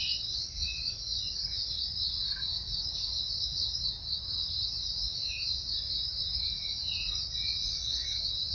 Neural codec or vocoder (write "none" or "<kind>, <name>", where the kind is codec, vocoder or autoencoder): none